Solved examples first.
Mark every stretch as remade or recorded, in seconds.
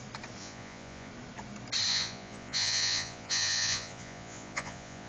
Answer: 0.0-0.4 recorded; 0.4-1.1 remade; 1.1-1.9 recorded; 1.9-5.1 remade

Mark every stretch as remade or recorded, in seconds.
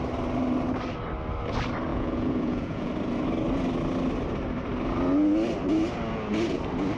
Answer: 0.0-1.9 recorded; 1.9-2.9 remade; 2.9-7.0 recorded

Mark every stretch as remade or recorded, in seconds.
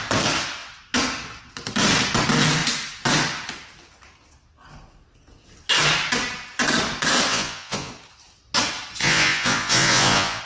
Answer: 0.0-7.3 recorded; 7.3-7.9 remade; 7.9-9.0 recorded; 9.0-10.4 remade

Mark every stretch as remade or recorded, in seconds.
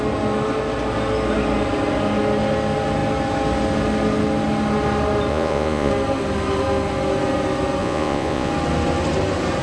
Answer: 0.0-5.3 recorded; 5.3-5.9 remade; 5.9-7.8 recorded; 7.8-8.5 remade; 8.5-9.6 recorded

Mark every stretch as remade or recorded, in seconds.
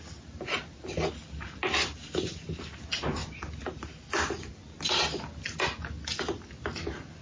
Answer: 0.0-7.2 recorded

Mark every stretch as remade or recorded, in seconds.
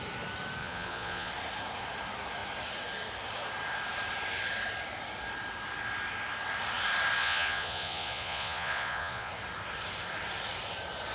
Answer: 0.0-0.6 recorded; 0.6-1.3 remade; 1.3-7.2 recorded; 7.2-9.3 remade; 9.3-11.1 recorded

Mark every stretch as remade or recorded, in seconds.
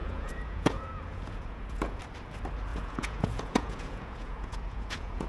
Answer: 0.0-2.0 remade; 2.0-2.7 recorded; 2.7-5.3 remade